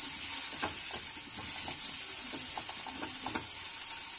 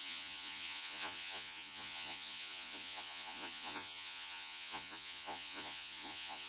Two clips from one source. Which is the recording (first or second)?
first